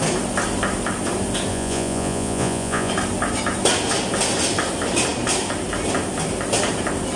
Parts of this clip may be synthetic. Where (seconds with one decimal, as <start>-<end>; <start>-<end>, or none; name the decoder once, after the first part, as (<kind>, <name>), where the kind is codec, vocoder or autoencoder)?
1.5-2.9 (vocoder, Vocos)